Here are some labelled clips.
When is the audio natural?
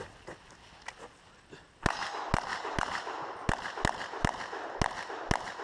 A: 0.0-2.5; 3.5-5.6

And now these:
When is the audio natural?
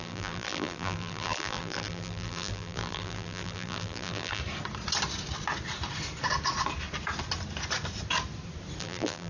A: 4.4-8.8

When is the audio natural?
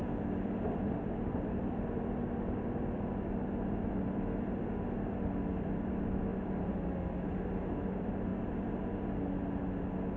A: 4.5-10.2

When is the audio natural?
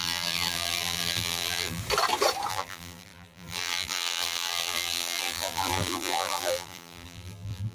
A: 1.8-2.5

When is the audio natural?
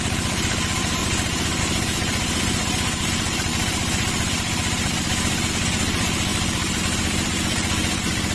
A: 1.0-1.6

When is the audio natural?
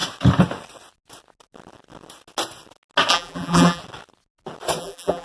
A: 0.0-3.1; 3.8-4.8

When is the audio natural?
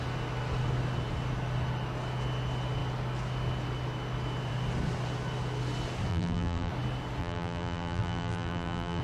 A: 0.0-6.1; 6.7-7.2